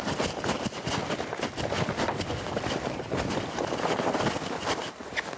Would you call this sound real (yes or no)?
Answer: yes